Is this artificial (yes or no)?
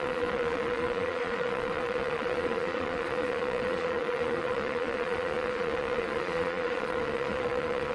yes